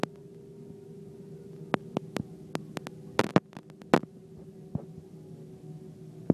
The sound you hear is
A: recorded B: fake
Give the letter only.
A